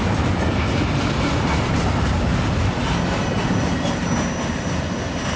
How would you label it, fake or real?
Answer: real